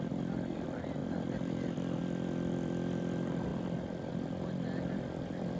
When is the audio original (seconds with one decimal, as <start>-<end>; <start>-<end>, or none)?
1.0-2.0